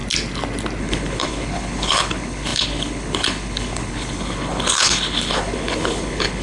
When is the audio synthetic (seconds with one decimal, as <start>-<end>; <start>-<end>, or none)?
0.8-6.4